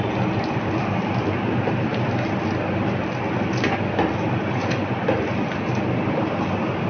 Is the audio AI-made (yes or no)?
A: no